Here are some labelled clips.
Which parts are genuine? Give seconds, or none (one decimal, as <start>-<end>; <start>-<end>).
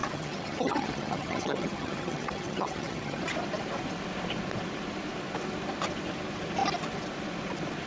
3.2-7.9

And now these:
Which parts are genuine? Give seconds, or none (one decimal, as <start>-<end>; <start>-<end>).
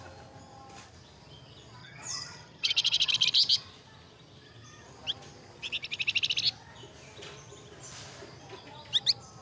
0.0-1.8; 3.1-9.4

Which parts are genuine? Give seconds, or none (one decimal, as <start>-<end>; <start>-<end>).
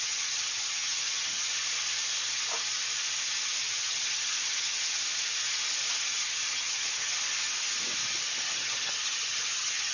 1.5-3.6; 5.0-6.0; 7.1-8.4